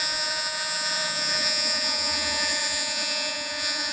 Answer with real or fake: fake